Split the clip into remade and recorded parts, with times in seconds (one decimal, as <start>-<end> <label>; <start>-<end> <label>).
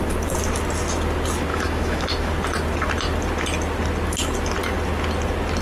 0.0-1.5 recorded; 1.5-2.3 remade; 2.3-5.6 recorded